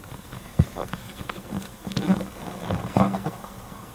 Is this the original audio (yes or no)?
no